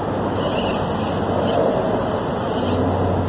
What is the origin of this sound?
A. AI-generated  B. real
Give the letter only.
B